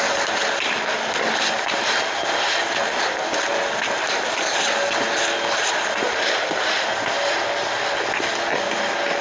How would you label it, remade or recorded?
recorded